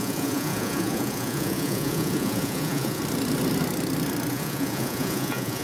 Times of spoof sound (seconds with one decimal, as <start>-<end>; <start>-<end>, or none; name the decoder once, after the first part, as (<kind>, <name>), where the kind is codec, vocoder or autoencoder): 0.0-3.0 (vocoder, Vocos); 4.3-5.6